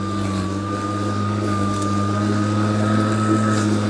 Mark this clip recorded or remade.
recorded